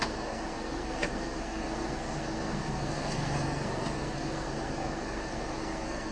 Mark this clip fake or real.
fake